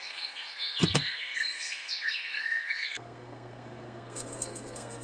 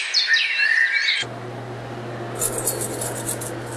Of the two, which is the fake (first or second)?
first